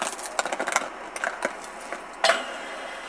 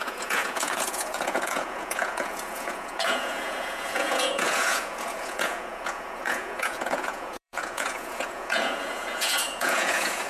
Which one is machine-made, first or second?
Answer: second